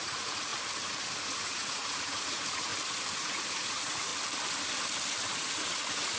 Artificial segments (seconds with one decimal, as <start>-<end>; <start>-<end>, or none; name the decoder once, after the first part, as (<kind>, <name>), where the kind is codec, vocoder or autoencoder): 0.0-0.5 (vocoder, Vocos); 1.2-2.7; 3.2-4.1; 5.3-6.2